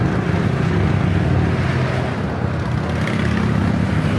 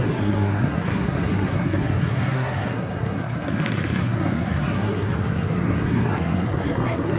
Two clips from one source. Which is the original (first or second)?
first